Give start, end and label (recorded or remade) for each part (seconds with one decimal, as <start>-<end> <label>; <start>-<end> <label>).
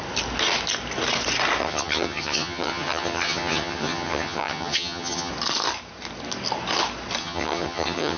0.0-1.6 recorded; 1.6-5.3 remade; 5.3-7.2 recorded; 7.2-8.2 remade